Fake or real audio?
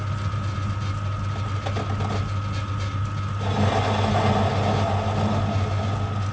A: real